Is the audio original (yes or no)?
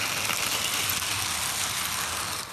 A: yes